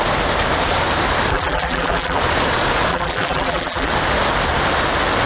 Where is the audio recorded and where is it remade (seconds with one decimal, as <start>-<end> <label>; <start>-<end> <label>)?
0.0-1.3 recorded; 1.3-2.2 remade; 2.2-2.9 recorded; 2.9-3.9 remade; 3.9-5.3 recorded